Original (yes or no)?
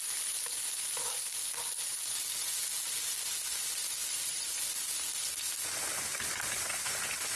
yes